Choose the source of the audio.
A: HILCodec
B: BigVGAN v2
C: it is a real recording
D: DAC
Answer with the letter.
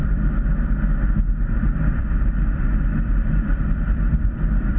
B